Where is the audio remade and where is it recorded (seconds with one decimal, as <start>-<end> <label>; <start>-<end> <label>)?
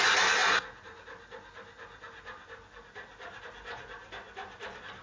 0.0-5.0 recorded